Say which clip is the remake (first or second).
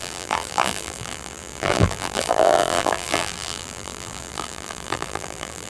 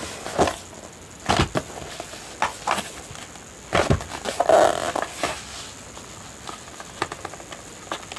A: first